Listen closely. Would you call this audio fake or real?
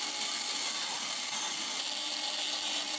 fake